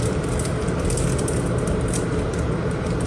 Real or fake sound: real